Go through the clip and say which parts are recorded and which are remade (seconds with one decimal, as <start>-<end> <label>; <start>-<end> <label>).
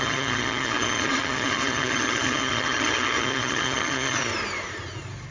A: 0.0-4.3 remade; 4.3-5.3 recorded